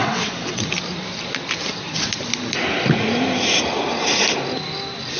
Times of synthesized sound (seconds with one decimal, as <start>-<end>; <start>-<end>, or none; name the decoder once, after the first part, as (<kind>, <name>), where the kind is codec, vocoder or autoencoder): 0.0-0.6 (vocoder, WaveNeXt)